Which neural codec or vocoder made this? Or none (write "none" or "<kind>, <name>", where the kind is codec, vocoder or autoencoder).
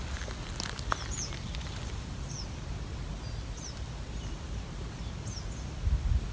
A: none